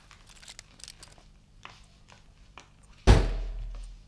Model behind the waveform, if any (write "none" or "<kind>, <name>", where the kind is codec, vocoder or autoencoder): none